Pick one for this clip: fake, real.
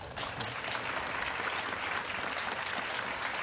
real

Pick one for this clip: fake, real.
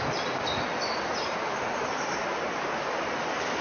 fake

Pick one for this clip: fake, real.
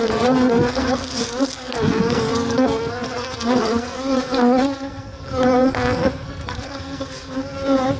fake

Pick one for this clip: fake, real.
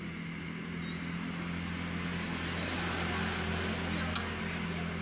real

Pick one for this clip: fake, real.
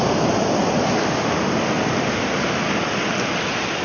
real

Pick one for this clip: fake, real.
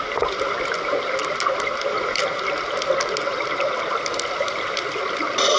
real